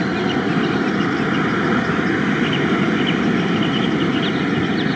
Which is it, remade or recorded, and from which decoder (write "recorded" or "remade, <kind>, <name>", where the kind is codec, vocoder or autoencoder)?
recorded